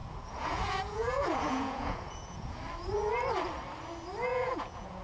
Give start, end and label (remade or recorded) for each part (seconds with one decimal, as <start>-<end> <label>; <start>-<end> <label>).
0.0-2.6 remade; 2.6-4.3 recorded; 4.3-5.0 remade